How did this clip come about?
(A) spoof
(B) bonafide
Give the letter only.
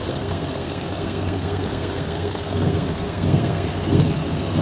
A